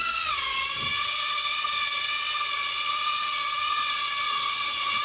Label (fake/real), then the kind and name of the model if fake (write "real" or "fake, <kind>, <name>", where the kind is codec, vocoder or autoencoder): fake, vocoder, WaveNeXt